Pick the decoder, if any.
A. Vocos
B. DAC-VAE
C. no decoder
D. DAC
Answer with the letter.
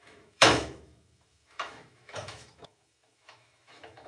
B